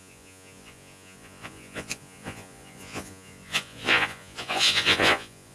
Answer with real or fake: fake